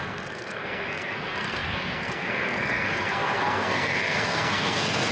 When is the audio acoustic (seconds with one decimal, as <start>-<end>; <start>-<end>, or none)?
none